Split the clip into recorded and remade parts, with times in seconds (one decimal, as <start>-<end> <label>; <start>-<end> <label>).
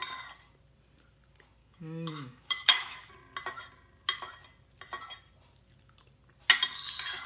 0.0-1.6 recorded; 1.6-3.1 remade; 3.1-7.3 recorded